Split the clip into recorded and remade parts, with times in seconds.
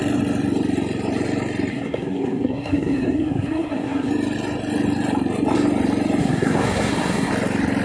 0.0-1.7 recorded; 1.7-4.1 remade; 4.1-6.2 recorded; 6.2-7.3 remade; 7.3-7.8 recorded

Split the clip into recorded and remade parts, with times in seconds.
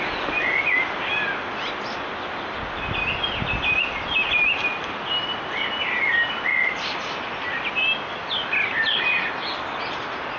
0.0-10.4 recorded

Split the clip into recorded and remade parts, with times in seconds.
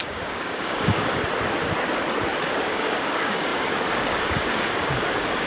0.0-1.2 remade; 1.2-2.4 recorded; 2.4-5.5 remade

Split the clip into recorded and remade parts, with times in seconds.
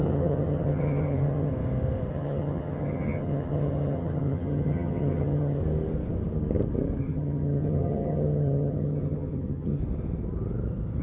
0.0-1.5 remade; 1.5-2.1 recorded; 2.1-5.6 remade; 5.6-7.0 recorded; 7.0-9.8 remade; 9.8-11.0 recorded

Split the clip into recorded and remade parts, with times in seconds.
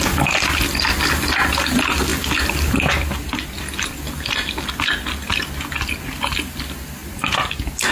0.0-2.1 recorded; 2.1-3.6 remade; 3.6-7.0 recorded; 7.0-7.5 remade; 7.5-7.9 recorded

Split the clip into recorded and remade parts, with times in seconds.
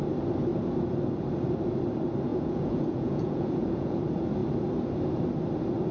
0.0-2.3 recorded; 2.3-4.0 remade; 4.0-5.9 recorded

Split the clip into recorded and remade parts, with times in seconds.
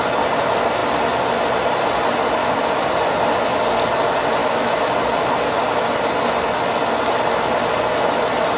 0.0-4.4 recorded; 4.4-4.9 remade; 4.9-8.6 recorded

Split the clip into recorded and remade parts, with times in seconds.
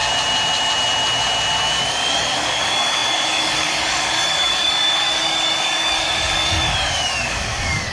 0.0-1.9 recorded; 1.9-7.9 remade